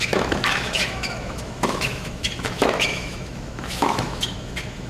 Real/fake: fake